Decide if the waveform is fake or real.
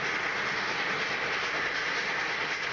real